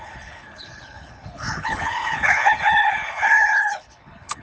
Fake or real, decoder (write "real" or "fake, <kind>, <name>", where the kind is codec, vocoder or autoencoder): fake, codec, HILCodec